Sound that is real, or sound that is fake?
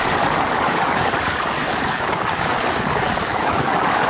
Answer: fake